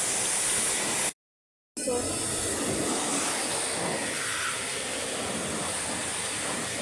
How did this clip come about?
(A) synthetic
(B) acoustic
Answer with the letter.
B